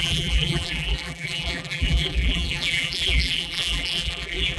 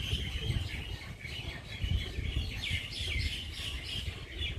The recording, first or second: second